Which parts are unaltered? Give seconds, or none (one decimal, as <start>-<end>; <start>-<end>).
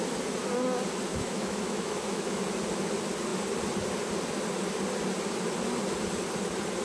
0.0-1.1; 2.4-6.8